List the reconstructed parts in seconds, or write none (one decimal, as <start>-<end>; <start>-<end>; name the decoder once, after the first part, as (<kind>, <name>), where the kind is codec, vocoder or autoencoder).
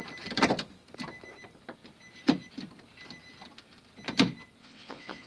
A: 4.6-5.3 (vocoder, WaveNeXt)